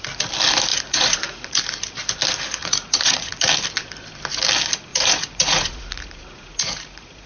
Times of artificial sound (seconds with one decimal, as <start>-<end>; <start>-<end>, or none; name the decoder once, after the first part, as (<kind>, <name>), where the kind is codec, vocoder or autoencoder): 0.7-1.6 (vocoder, Vocos); 2.6-3.4; 4.9-7.3